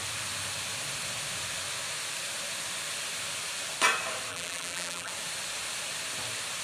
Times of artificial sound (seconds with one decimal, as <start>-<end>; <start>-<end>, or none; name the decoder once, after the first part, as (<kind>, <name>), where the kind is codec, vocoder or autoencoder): 4.3-5.1 (vocoder, BigVGAN v2)